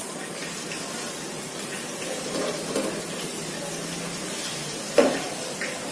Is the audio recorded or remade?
recorded